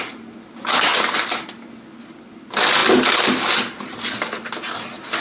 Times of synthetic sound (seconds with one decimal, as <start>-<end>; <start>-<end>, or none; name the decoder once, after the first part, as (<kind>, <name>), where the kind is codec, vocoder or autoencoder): none